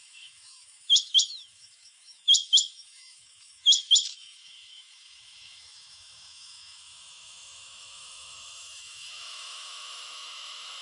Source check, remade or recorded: remade